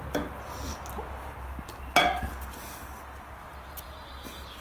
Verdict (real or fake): real